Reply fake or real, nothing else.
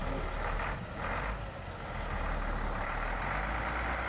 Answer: real